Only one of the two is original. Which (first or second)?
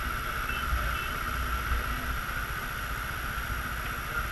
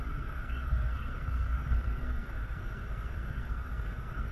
first